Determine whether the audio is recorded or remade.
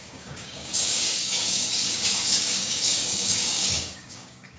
remade